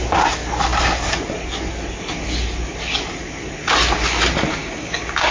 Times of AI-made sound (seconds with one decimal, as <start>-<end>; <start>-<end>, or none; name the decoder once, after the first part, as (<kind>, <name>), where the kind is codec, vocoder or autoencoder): 4.6-5.3 (codec, DAC)